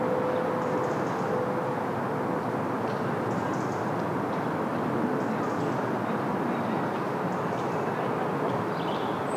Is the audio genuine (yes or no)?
yes